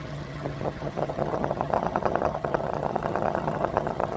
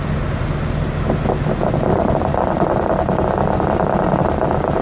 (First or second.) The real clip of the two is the second